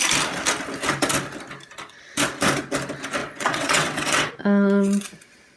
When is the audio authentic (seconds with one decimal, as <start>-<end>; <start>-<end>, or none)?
0.0-3.2; 4.3-5.6